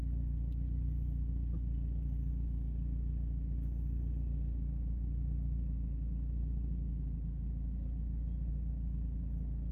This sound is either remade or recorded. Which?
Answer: recorded